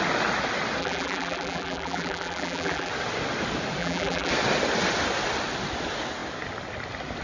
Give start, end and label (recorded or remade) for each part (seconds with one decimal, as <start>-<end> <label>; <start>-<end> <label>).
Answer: 0.0-0.8 recorded; 0.8-2.9 remade; 2.9-3.8 recorded; 3.8-4.3 remade; 4.3-7.2 recorded